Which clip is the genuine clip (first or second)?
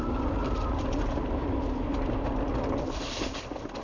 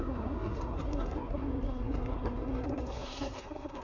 first